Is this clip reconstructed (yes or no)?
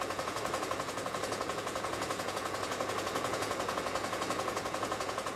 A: yes